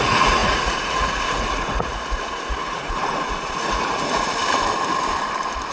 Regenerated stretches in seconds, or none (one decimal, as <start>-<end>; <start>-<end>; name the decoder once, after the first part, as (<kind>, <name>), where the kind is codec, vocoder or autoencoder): 0.0-4.4 (vocoder, Vocos)

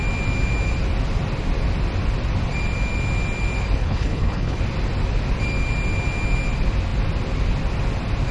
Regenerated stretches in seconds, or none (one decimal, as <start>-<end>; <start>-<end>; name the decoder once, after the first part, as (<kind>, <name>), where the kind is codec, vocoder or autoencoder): 3.8-4.6 (codec, HILCodec)